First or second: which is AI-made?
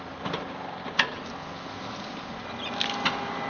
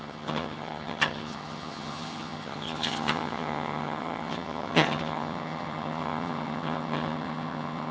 second